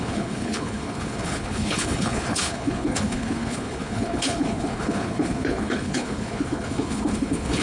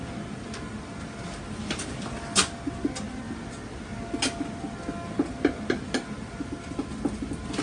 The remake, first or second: first